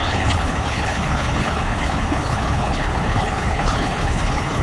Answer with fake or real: fake